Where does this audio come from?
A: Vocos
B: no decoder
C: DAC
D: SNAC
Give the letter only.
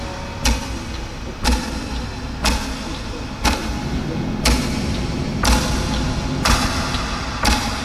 B